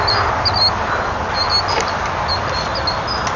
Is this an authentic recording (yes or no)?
yes